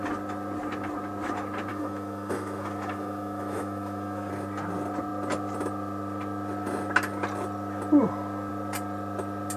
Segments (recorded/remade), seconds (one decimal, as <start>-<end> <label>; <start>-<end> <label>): 0.0-1.7 recorded; 1.7-4.3 remade; 4.3-9.6 recorded